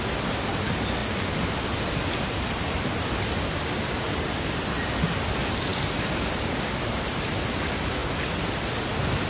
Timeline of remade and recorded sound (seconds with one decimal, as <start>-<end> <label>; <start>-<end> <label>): 0.0-9.3 recorded